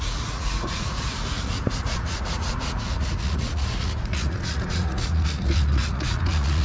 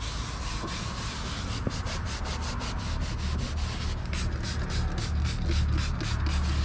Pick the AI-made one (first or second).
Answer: first